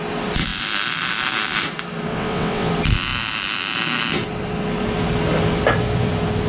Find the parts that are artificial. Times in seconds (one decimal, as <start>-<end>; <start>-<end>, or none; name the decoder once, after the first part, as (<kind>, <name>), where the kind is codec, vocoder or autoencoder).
2.1-2.7 (vocoder, WaveNeXt)